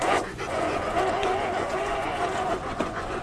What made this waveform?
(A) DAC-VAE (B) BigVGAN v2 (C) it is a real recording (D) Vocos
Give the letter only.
D